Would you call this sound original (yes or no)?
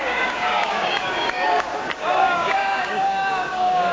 no